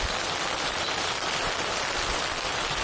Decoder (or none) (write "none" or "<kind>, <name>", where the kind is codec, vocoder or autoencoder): none